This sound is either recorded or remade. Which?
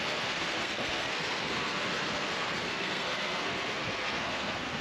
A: remade